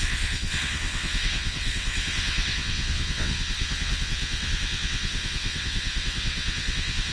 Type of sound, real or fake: fake